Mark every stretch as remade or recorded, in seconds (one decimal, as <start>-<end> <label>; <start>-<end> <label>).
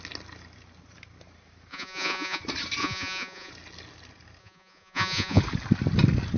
0.0-1.7 recorded; 1.7-2.4 remade; 2.4-2.8 recorded; 2.8-3.5 remade; 3.5-4.4 recorded; 4.4-5.4 remade; 5.4-6.4 recorded